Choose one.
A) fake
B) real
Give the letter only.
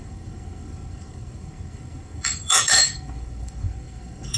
A